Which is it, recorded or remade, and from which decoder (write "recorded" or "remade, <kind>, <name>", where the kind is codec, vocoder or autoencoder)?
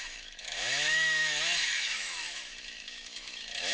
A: remade, autoencoder, DAC-VAE